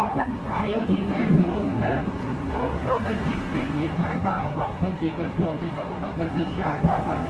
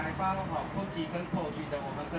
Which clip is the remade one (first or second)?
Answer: first